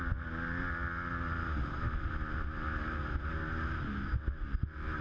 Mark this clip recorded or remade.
recorded